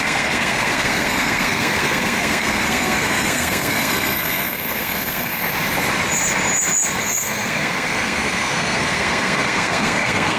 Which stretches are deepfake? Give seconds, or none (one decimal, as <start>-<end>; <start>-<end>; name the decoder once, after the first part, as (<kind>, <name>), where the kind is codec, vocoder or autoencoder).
0.0-5.4 (codec, SNAC); 7.0-10.4